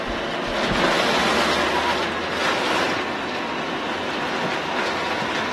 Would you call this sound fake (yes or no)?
no